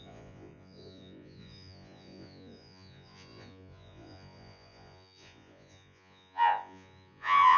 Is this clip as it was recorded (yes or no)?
no